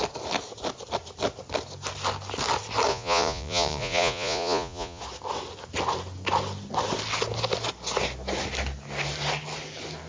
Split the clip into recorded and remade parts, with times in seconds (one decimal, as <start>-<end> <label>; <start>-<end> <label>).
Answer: 0.0-2.9 recorded; 2.9-5.0 remade; 5.0-10.1 recorded